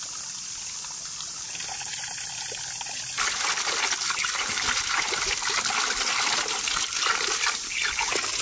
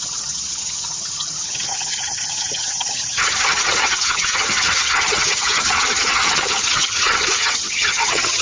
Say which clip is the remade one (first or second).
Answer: second